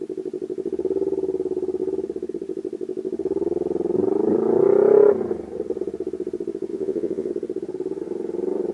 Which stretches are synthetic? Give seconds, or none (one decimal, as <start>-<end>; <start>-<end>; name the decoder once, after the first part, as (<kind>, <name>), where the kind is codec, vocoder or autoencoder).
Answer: 6.7-7.3 (vocoder, Vocos)